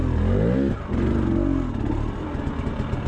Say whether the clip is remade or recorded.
recorded